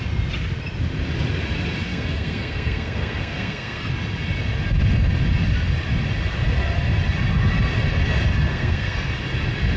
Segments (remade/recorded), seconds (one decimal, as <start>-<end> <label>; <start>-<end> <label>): 0.0-1.9 recorded; 1.9-3.9 remade; 3.9-8.5 recorded; 8.5-9.1 remade; 9.1-9.8 recorded